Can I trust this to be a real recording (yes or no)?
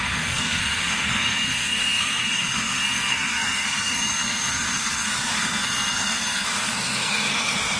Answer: no